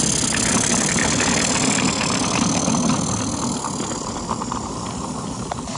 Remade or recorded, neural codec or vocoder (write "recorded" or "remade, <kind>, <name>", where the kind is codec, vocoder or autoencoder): recorded